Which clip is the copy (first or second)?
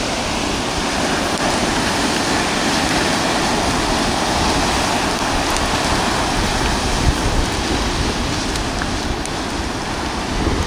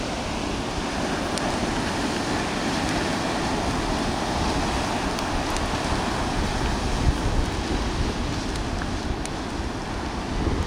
first